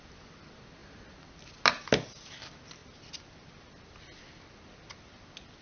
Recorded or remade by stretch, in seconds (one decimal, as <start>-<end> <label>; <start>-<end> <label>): 0.0-5.6 recorded